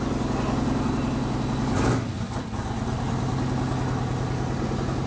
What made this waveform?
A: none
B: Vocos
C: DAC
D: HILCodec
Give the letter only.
A